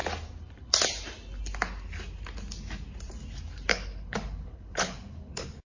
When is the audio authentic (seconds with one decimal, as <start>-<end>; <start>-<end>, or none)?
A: 0.0-3.7